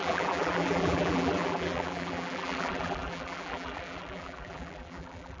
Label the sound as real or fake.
fake